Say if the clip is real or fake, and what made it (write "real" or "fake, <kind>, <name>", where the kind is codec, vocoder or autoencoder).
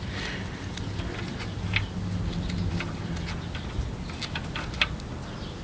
real